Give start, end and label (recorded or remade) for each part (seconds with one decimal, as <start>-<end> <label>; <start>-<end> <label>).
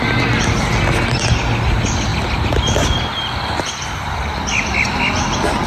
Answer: 0.0-5.7 recorded